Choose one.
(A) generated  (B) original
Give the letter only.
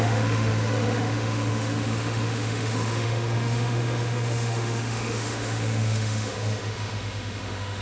A